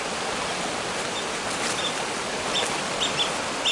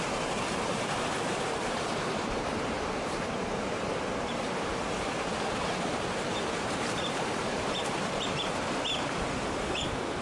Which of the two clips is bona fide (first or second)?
first